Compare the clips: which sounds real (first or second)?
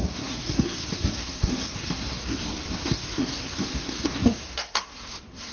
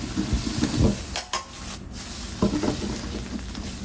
second